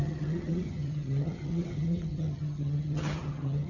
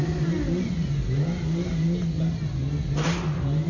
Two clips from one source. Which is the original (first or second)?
second